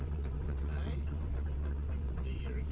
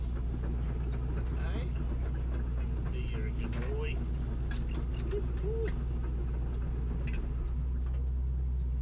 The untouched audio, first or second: second